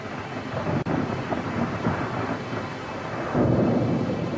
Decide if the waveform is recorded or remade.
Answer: recorded